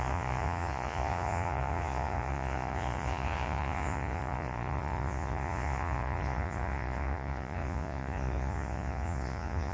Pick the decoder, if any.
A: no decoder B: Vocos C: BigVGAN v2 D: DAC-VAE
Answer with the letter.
B